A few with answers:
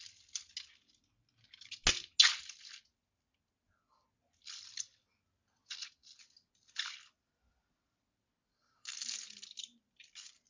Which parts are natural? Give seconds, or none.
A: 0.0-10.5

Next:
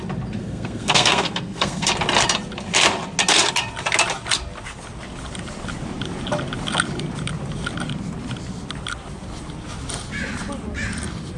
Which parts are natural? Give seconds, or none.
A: 0.0-0.4; 1.9-11.4

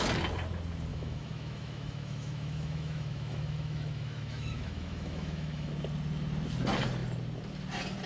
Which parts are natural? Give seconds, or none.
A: 0.0-0.9; 5.7-8.1

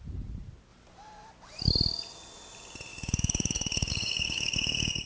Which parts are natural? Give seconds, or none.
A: 0.0-2.9

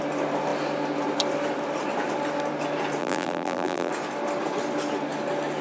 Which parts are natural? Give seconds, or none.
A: 0.0-3.0; 3.9-5.6